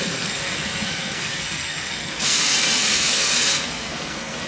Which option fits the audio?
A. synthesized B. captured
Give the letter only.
A